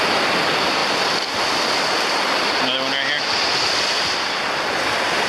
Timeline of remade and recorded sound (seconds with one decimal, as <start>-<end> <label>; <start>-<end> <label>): 0.0-5.3 recorded